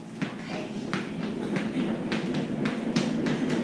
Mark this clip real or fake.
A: real